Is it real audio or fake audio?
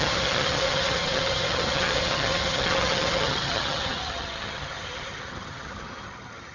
fake